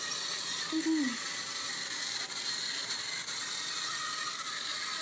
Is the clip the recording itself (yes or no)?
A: yes